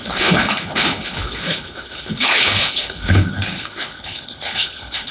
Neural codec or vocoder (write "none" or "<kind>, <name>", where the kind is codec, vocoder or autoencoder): codec, HILCodec